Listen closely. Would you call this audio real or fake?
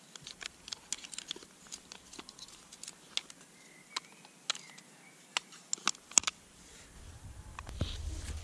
real